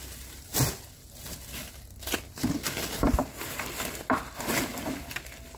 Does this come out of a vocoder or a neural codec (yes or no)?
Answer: no